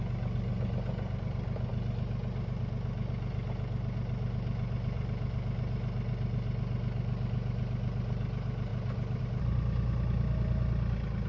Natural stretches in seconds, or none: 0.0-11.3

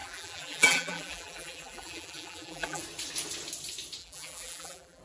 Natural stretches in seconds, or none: 2.8-4.0

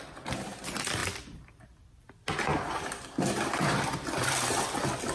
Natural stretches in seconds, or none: 0.0-2.5

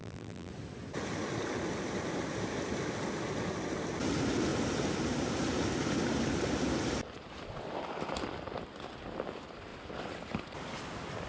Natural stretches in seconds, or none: 0.5-11.3

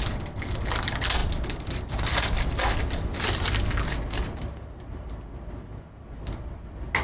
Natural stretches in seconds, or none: 0.0-7.0

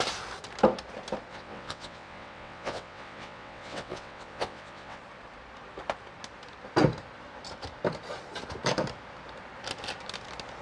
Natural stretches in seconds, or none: 0.0-1.3; 5.0-10.6